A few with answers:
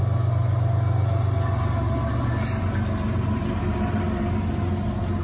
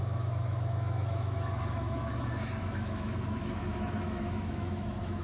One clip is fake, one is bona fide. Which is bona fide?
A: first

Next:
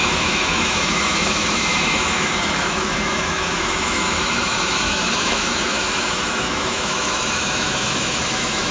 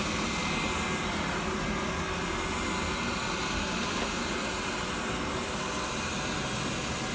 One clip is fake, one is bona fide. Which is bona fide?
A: second